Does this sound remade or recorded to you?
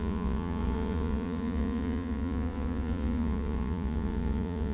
remade